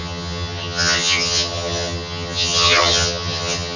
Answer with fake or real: fake